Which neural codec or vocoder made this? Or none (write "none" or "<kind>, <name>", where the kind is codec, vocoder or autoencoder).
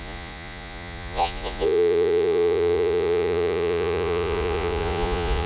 vocoder, Vocos